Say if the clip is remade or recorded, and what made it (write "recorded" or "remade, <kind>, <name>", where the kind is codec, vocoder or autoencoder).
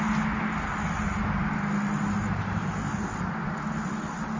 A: recorded